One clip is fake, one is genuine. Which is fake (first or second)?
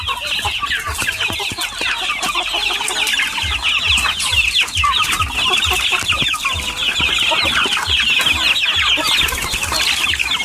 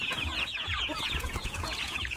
second